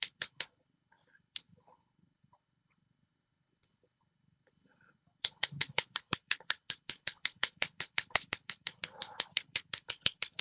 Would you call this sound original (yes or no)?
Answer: no